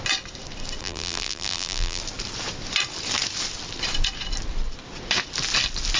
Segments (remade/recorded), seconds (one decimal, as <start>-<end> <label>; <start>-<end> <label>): 0.0-0.8 recorded; 0.8-2.0 remade; 2.0-6.0 recorded